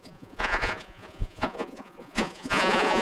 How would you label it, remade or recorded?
remade